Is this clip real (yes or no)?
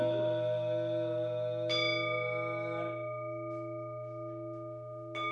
yes